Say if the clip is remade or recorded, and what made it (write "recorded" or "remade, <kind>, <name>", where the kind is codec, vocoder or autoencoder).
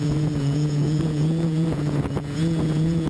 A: remade, vocoder, Vocos